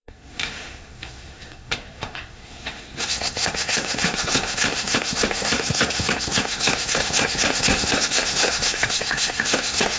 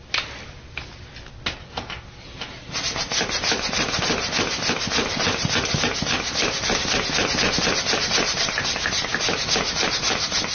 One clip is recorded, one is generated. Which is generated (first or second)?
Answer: first